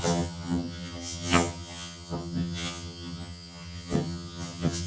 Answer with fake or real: fake